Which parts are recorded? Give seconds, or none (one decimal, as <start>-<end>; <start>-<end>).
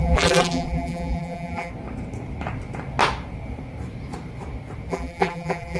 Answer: 1.7-4.9